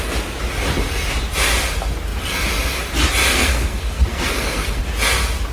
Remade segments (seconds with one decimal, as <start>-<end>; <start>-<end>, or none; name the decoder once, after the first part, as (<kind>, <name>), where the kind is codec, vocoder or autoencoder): 3.3-4.8 (codec, SNAC)